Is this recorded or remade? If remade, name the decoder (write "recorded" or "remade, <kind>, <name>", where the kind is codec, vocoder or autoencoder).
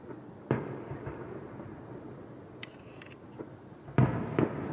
recorded